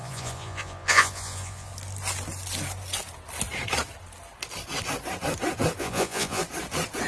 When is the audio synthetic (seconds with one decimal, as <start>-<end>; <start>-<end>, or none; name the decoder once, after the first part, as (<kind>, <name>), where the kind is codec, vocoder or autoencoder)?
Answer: 0.0-1.7 (vocoder, Vocos); 5.8-6.4